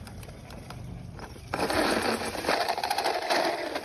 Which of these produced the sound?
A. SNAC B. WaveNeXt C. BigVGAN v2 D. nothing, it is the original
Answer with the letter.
C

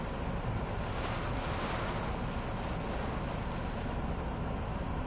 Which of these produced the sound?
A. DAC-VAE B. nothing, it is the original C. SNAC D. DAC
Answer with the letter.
B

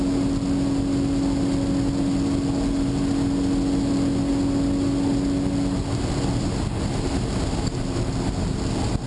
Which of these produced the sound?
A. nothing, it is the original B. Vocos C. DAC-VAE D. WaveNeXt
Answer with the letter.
A